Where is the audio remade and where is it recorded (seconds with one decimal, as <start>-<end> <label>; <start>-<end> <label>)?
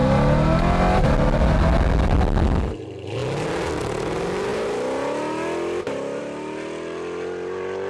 0.0-7.9 recorded